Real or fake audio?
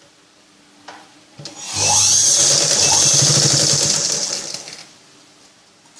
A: real